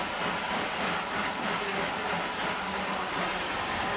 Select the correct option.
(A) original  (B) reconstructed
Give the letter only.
A